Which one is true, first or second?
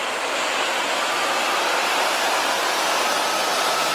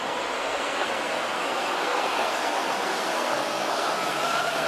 first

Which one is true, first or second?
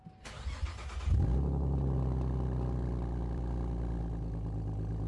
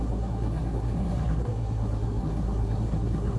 first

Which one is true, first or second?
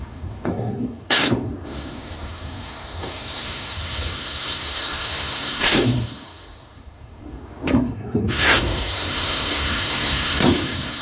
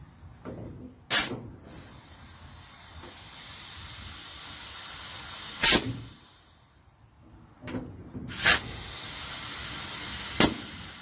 second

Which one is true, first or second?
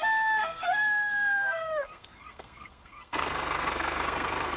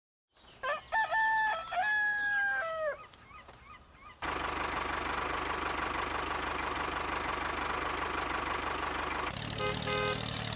second